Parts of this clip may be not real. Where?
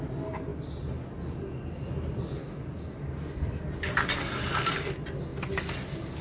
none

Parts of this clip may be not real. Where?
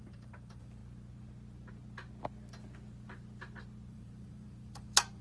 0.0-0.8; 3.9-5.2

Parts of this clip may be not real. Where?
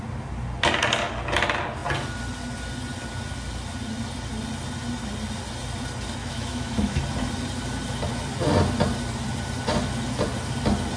6.2-7.0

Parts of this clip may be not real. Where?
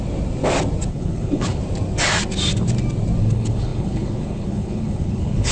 0.9-1.6; 3.2-5.5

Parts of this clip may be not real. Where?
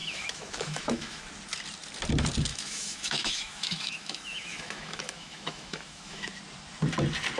0.0-1.3; 2.5-6.3